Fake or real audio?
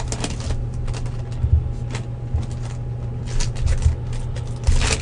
real